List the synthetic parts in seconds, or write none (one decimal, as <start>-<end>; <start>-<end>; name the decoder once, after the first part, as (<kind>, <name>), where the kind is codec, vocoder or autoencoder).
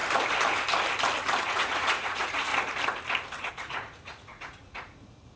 1.4-2.5 (vocoder, Vocos); 3.5-5.4